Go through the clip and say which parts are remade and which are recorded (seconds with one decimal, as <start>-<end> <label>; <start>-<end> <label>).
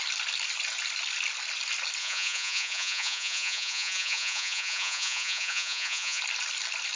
0.0-2.0 recorded; 2.0-6.2 remade; 6.2-7.0 recorded